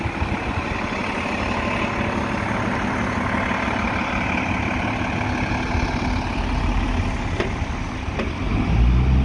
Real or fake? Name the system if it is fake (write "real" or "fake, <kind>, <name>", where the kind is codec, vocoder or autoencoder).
real